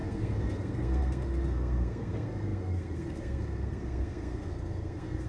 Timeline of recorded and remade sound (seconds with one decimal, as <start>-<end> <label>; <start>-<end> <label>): 0.0-5.3 remade